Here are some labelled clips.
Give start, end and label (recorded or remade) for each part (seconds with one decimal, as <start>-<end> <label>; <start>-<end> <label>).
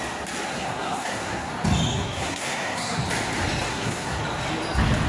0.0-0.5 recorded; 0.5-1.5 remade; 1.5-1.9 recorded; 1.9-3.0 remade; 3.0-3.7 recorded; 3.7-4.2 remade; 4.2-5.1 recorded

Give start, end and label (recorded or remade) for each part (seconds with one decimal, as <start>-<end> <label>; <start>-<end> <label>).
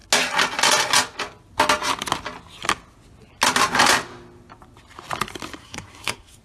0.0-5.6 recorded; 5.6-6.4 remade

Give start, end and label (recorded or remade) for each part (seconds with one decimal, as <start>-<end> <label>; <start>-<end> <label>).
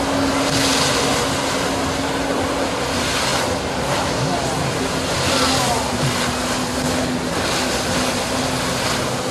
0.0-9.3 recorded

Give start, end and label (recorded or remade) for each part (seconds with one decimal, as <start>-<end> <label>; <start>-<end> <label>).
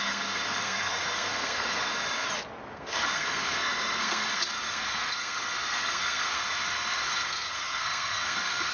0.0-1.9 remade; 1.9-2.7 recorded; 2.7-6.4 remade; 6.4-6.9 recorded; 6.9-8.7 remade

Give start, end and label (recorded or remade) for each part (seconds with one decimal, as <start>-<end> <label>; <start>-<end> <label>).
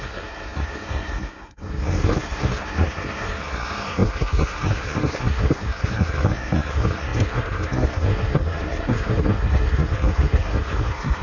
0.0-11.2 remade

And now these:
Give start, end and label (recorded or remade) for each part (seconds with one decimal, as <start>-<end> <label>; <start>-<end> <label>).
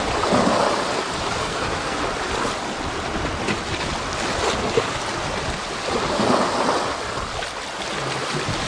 0.0-1.4 recorded; 1.4-2.0 remade; 2.0-8.7 recorded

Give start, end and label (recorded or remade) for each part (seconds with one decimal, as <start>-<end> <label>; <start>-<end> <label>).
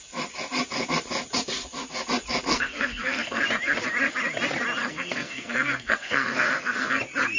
0.0-2.5 recorded; 2.5-3.4 remade; 3.4-4.8 recorded; 4.8-7.0 remade; 7.0-7.4 recorded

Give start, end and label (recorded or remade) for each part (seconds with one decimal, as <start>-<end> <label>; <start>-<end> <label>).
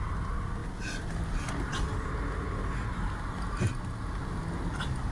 0.0-5.1 recorded